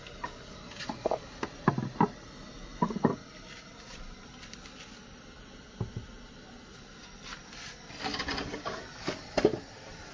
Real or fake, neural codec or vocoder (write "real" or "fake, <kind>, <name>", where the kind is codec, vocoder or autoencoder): real